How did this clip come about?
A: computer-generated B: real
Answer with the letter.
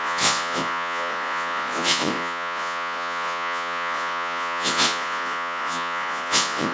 A